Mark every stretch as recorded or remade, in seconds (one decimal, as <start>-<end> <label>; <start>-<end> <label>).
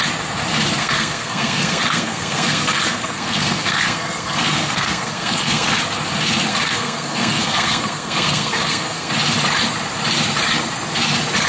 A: 0.0-0.8 recorded; 0.8-5.8 remade; 5.8-6.5 recorded; 6.5-9.1 remade; 9.1-11.5 recorded